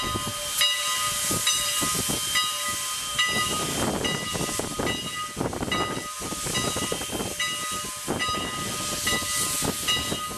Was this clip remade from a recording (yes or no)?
no